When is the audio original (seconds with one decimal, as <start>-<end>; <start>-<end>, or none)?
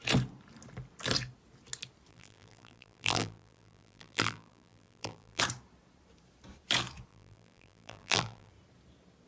0.0-2.1; 5.4-7.1; 8.5-9.3